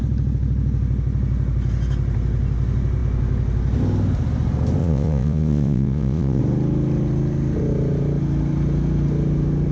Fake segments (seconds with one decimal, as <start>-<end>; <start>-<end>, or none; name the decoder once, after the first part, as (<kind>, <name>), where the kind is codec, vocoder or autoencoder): 4.8-6.4 (vocoder, Vocos)